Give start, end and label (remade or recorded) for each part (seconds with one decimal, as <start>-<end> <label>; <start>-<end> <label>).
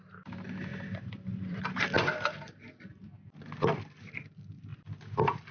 0.0-0.7 recorded; 0.7-1.6 remade; 1.6-4.7 recorded; 4.7-5.5 remade